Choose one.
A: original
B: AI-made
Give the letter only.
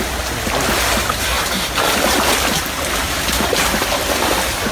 B